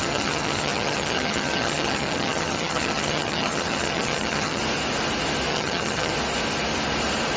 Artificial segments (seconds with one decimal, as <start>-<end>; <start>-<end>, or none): 0.0-4.6; 5.5-6.1